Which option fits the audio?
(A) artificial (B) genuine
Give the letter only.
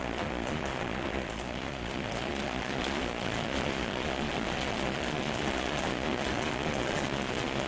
A